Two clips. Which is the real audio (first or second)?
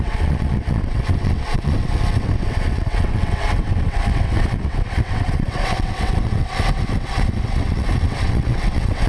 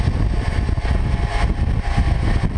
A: second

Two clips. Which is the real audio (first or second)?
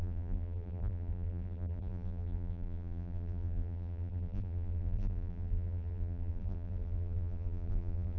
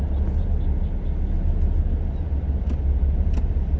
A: second